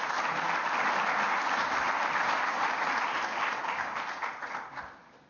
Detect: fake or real real